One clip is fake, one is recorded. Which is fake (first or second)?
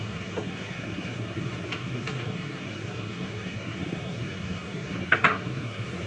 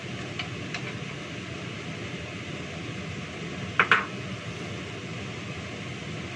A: first